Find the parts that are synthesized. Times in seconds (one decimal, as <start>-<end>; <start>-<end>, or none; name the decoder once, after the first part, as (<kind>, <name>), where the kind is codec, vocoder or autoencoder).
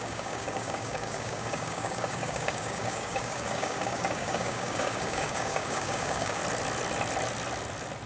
0.0-6.4 (codec, DAC)